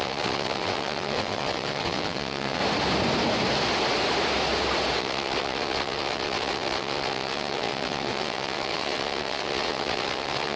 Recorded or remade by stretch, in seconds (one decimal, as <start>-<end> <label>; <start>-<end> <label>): 0.0-2.6 remade; 2.6-5.0 recorded; 5.0-10.6 remade